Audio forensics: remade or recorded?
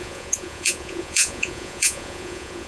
remade